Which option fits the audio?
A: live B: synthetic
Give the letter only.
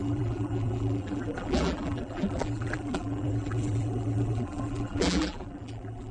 B